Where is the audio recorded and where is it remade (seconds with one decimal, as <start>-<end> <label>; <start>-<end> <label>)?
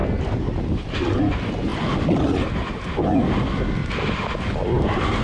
0.0-5.2 recorded